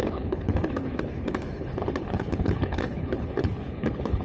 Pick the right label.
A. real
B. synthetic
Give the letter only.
B